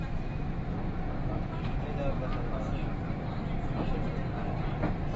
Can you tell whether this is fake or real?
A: real